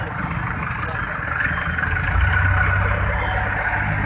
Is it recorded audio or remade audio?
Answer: recorded